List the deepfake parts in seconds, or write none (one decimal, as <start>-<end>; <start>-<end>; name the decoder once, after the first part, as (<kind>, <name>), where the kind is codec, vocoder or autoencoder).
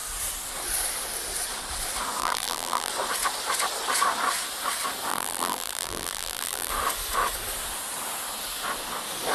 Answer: 2.2-2.9 (vocoder, BigVGAN v2); 5.1-6.7